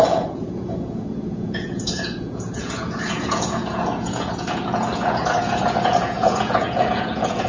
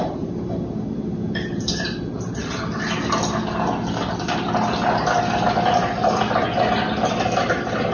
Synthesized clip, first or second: first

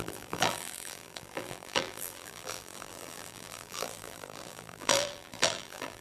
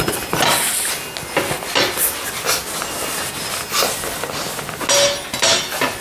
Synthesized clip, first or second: first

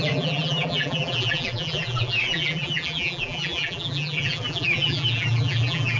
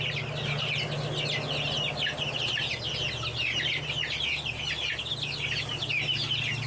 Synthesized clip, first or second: first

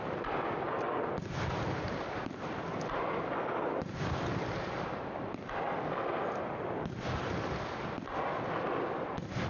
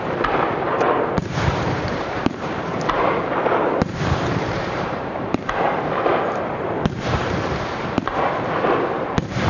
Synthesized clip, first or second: second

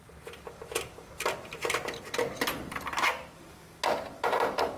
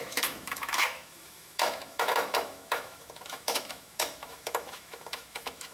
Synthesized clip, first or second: second